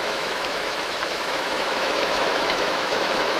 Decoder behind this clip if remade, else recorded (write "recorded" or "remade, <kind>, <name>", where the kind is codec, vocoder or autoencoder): remade, autoencoder, DAC-VAE